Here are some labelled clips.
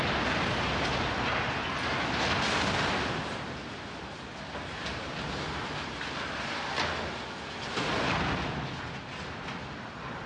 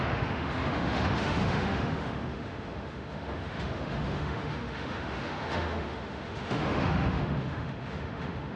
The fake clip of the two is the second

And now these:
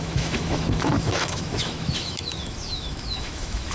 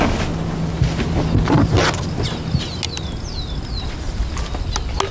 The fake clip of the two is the first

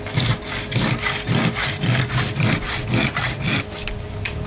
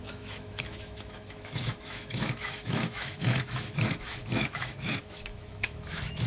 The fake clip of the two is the second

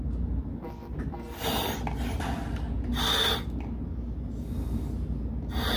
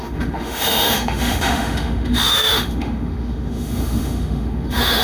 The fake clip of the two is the second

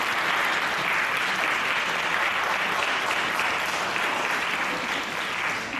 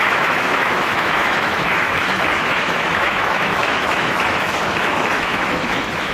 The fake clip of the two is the second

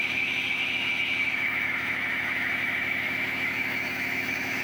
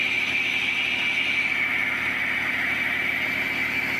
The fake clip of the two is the first